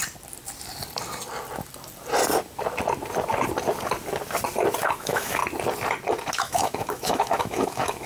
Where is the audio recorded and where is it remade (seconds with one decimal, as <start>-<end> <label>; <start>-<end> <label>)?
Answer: 0.0-4.8 recorded; 4.8-5.4 remade; 5.4-6.3 recorded; 6.3-8.1 remade